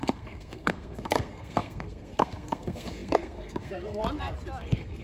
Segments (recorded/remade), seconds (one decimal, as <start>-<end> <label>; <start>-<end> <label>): 0.0-4.0 remade; 4.0-4.6 recorded; 4.6-5.0 remade